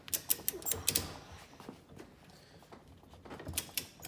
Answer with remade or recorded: recorded